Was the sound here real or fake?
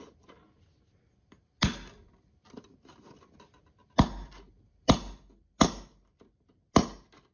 real